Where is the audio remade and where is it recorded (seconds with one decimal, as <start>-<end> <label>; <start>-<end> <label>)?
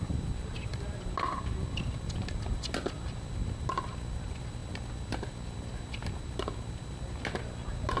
0.0-8.0 recorded